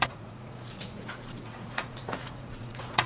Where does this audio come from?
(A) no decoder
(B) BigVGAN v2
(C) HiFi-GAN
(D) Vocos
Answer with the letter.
D